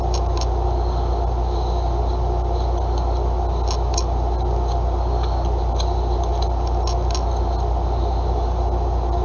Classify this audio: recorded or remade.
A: recorded